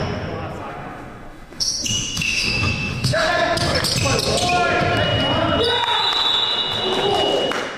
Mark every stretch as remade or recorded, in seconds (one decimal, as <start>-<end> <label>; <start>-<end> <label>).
0.0-0.6 recorded; 0.6-3.3 remade; 3.3-7.8 recorded